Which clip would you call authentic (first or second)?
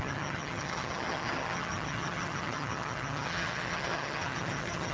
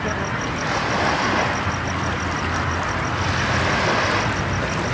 second